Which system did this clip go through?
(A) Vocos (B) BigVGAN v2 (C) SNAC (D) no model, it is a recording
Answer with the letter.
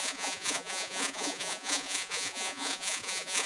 A